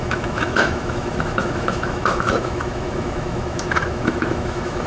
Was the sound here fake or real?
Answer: fake